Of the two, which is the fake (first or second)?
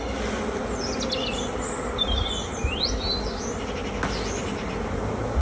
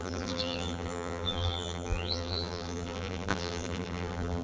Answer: second